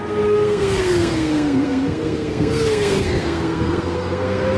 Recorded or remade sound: remade